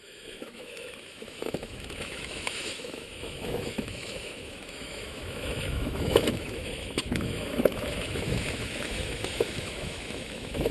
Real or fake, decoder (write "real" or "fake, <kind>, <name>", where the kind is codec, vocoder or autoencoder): fake, autoencoder, DAC-VAE